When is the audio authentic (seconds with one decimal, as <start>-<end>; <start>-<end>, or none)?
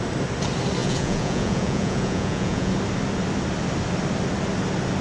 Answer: 0.0-0.8; 2.7-5.0